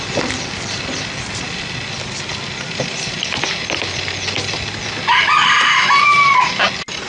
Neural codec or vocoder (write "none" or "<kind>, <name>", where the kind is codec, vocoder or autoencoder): none